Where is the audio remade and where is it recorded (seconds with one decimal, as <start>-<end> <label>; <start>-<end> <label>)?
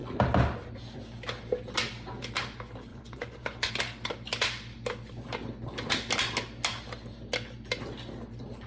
0.0-2.9 recorded; 2.9-3.7 remade; 3.7-8.7 recorded